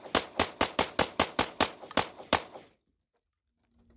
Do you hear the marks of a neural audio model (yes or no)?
no